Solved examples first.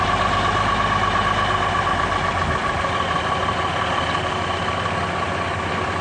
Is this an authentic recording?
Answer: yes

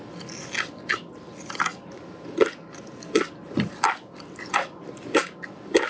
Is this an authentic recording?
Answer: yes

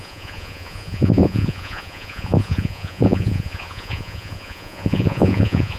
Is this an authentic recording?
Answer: no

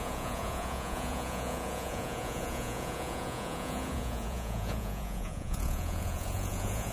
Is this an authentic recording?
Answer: no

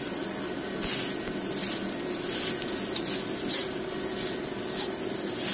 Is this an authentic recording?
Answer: yes